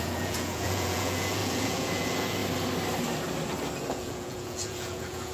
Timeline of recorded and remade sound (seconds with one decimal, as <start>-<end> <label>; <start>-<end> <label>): 0.0-2.4 remade; 2.4-3.9 recorded; 3.9-5.3 remade